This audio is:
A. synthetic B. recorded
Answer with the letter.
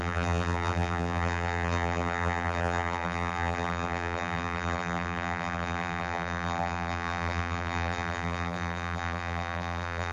A